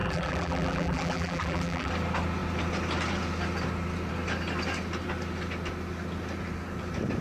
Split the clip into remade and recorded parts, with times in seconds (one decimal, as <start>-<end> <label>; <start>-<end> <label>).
0.0-1.9 remade; 1.9-7.2 recorded

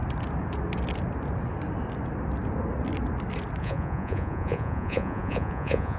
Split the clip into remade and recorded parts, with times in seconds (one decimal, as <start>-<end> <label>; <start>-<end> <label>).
0.0-3.6 recorded; 3.6-6.0 remade

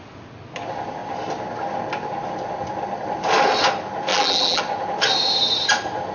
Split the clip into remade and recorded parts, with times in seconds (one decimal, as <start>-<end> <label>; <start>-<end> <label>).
0.0-4.1 recorded; 4.1-4.6 remade; 4.6-6.1 recorded

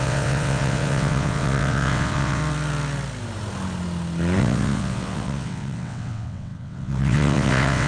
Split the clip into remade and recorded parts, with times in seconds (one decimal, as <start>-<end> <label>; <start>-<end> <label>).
0.0-2.4 remade; 2.4-4.4 recorded; 4.4-7.9 remade

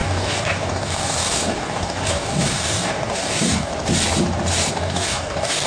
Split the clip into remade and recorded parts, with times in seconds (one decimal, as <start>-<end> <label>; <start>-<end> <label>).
0.0-3.7 remade; 3.7-4.7 recorded; 4.7-5.7 remade

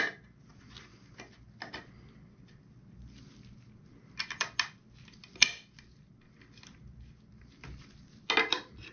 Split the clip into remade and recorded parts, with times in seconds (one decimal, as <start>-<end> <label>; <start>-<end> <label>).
0.0-8.9 recorded

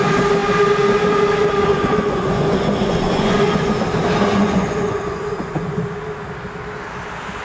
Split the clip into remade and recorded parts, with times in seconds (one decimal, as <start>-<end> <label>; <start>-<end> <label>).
0.0-1.7 recorded; 1.7-3.7 remade; 3.7-4.3 recorded; 4.3-5.8 remade; 5.8-7.4 recorded

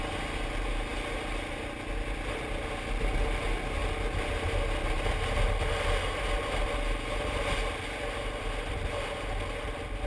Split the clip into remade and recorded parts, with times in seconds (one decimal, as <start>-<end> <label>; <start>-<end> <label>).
0.0-10.1 recorded